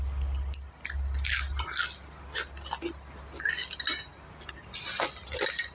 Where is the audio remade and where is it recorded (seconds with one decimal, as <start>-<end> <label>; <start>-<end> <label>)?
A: 0.0-5.7 recorded